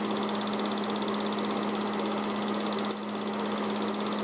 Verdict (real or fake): real